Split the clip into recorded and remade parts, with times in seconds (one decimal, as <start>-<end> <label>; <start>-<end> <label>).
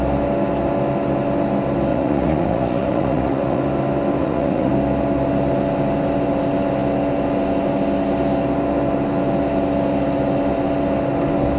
0.0-1.9 recorded; 1.9-3.6 remade; 3.6-4.2 recorded; 4.2-4.7 remade; 4.7-11.6 recorded